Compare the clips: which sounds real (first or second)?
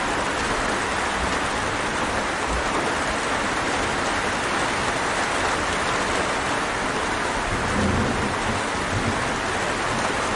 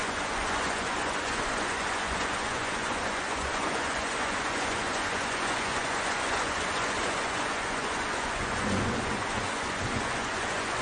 first